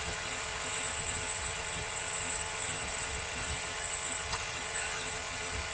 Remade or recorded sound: remade